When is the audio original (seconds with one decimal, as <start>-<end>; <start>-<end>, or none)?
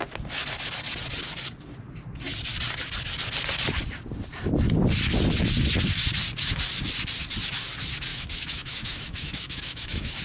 0.0-8.1